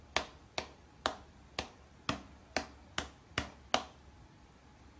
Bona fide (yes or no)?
yes